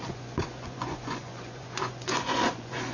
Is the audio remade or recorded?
remade